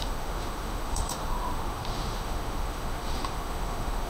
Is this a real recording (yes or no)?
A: no